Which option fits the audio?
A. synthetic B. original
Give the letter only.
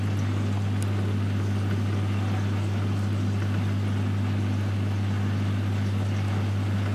B